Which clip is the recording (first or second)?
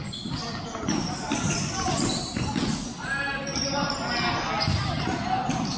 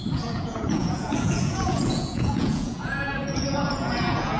first